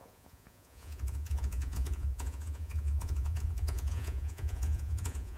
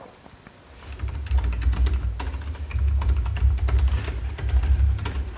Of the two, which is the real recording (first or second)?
second